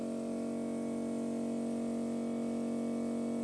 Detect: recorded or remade recorded